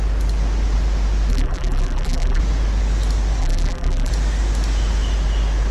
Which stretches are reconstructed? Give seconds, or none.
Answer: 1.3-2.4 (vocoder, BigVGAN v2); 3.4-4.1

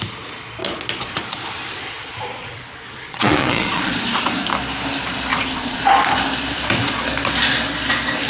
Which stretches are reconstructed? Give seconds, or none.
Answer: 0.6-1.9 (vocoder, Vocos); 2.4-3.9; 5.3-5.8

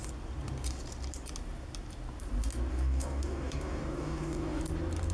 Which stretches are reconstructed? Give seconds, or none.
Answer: 2.7-4.6 (codec, DAC)

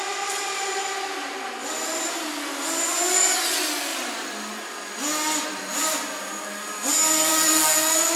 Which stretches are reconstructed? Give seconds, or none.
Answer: 0.0-0.7 (vocoder, BigVGAN v2); 3.9-4.9

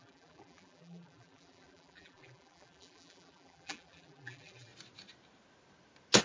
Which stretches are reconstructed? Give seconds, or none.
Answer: 0.0-4.7 (vocoder, BigVGAN v2)